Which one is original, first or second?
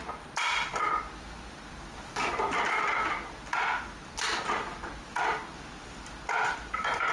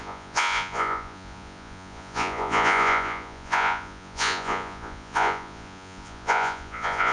first